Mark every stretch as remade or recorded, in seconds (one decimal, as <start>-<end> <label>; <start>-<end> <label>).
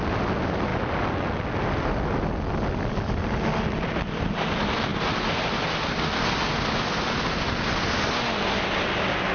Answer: 0.0-9.3 recorded